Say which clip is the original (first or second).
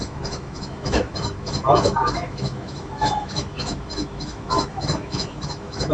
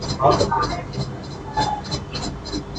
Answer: second